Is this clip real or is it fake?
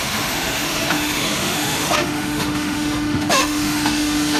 fake